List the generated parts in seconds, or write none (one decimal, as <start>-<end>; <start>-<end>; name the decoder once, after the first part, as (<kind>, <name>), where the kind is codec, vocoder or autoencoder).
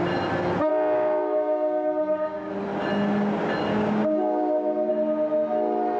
0.7-2.5 (codec, DAC); 3.7-4.9